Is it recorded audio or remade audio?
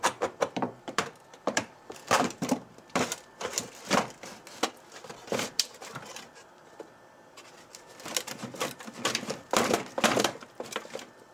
remade